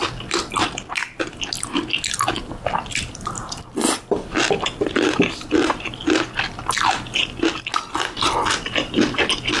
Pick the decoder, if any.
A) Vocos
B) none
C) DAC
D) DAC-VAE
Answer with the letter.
B